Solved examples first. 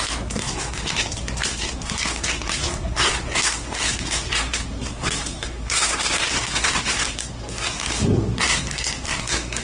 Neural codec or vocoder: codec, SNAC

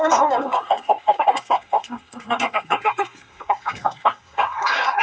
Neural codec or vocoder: codec, SNAC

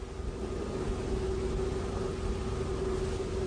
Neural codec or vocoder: none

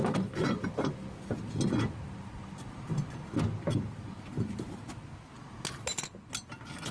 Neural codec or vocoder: none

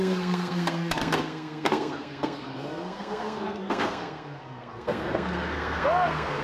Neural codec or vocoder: codec, SNAC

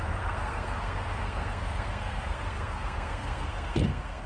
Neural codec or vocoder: codec, SNAC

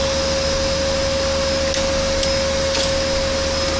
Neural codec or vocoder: none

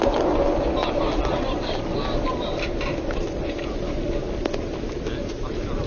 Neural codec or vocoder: none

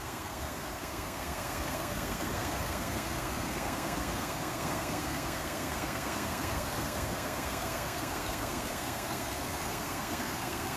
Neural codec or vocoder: codec, SNAC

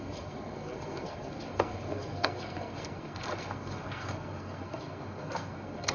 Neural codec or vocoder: codec, SNAC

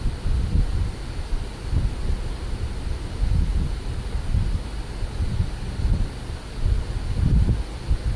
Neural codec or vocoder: none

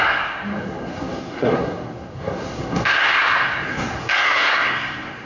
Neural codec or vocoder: codec, SNAC